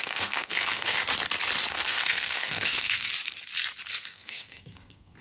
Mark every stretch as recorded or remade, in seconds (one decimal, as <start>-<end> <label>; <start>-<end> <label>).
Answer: 0.0-1.0 remade; 1.0-1.7 recorded; 1.7-3.1 remade; 3.1-3.9 recorded; 3.9-5.2 remade